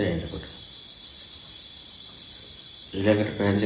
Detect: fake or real real